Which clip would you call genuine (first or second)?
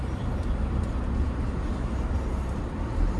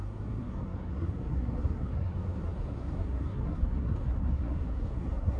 first